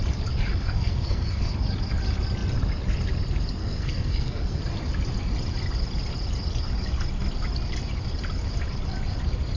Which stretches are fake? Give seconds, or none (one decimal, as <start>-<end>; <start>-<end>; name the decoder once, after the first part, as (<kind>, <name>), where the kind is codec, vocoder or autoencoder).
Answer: 0.6-1.5 (codec, SNAC); 3.6-4.6